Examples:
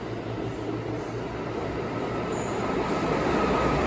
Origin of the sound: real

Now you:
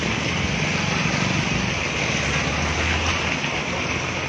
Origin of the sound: real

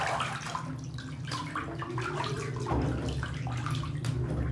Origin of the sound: real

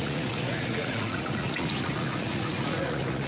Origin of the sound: fake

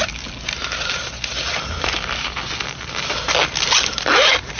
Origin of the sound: real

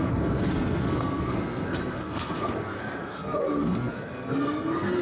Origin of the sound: fake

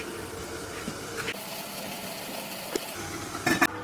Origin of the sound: real